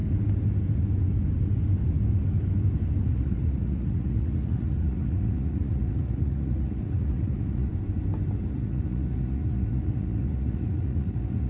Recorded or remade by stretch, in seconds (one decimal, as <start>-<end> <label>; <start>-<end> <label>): 0.0-3.1 recorded; 3.1-7.7 remade; 7.7-8.5 recorded; 8.5-11.5 remade